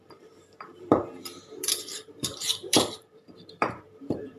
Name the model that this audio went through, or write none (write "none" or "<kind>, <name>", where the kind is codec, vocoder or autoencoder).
vocoder, BigVGAN v2